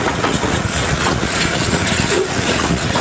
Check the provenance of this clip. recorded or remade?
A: remade